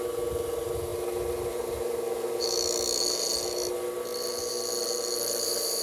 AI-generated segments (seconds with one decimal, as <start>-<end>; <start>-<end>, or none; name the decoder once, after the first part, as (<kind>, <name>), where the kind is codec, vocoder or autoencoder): none